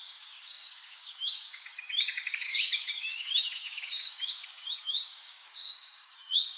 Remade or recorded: remade